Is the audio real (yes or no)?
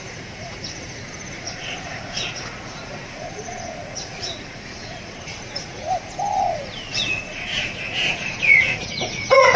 no